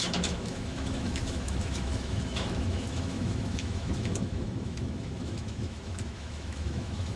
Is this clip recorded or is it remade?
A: remade